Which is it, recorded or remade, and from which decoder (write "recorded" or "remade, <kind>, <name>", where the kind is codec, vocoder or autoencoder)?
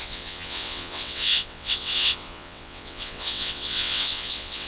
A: remade, vocoder, WaveNeXt